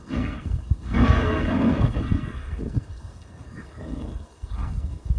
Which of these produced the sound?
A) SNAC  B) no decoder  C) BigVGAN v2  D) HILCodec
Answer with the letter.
A